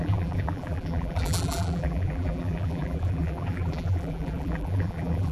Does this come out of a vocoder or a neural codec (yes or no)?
yes